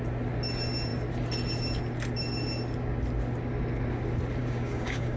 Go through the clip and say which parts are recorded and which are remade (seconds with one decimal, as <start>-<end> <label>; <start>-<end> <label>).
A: 0.0-4.4 recorded; 4.4-5.2 remade